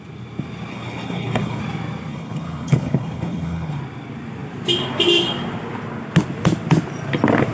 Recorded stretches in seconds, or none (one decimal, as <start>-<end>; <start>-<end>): 0.0-0.7; 1.6-2.1; 3.8-7.5